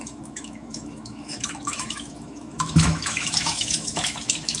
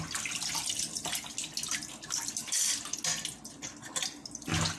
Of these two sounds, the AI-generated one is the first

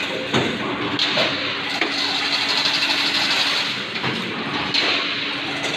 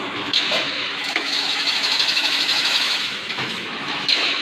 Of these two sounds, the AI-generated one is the second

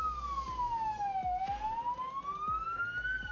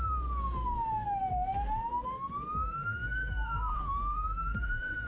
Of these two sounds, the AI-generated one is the second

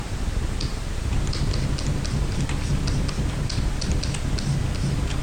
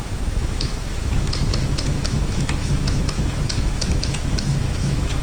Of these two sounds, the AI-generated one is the second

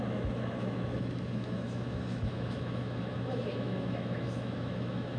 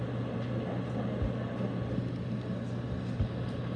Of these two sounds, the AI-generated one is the first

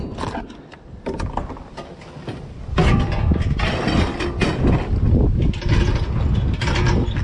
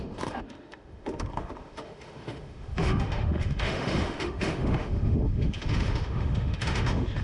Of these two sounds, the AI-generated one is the second